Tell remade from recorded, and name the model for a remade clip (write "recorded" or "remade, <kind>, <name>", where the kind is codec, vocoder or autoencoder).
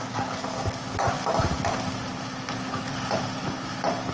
recorded